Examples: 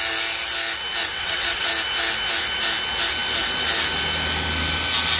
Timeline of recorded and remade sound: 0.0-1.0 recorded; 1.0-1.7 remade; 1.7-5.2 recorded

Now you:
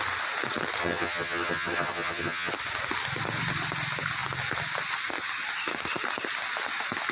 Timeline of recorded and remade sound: 0.0-0.8 recorded; 0.8-2.5 remade; 2.5-7.1 recorded

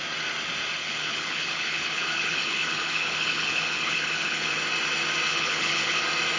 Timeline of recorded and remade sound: 0.0-0.8 recorded; 0.8-4.6 remade; 4.6-5.3 recorded; 5.3-6.0 remade; 6.0-6.4 recorded